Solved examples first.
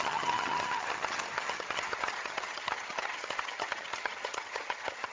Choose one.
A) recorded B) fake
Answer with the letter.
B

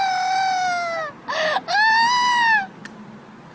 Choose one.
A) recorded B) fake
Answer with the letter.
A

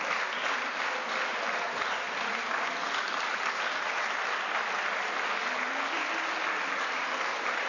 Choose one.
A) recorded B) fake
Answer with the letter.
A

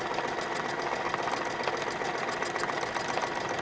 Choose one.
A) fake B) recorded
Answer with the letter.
B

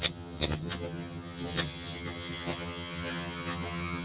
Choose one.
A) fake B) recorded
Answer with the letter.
A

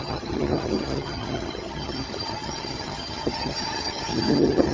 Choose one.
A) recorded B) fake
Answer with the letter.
B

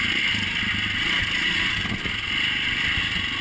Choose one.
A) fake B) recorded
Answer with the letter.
B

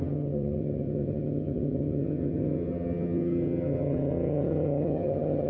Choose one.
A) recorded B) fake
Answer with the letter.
B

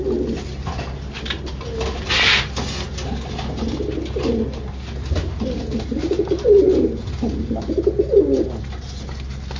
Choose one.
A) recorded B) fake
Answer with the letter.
A